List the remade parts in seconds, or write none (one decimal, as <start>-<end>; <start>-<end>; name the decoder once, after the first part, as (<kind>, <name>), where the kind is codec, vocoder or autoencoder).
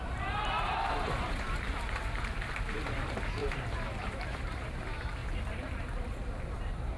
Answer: 0.0-5.2 (vocoder, BigVGAN v2); 6.5-7.0